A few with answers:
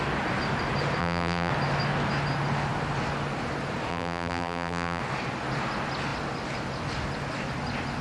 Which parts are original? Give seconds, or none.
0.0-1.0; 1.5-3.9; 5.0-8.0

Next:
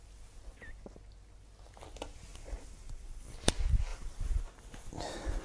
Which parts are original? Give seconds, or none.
0.0-2.3; 3.5-3.9; 4.4-5.4

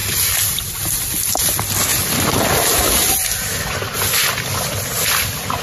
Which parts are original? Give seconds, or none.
0.6-5.6